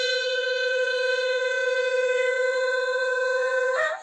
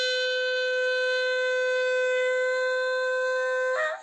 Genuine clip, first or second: second